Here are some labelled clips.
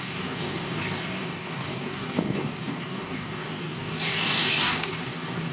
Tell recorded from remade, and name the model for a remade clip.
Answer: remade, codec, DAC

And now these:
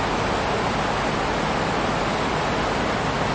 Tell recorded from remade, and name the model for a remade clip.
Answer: recorded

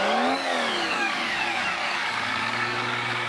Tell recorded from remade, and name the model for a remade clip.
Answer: remade, codec, DAC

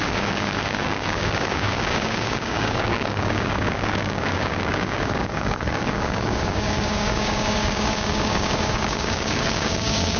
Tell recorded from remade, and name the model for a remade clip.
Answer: remade, codec, DAC